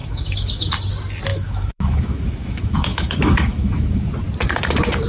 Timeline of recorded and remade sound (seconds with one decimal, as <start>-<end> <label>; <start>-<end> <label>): 0.0-0.7 remade; 0.7-1.3 recorded; 1.3-4.1 remade; 4.1-5.1 recorded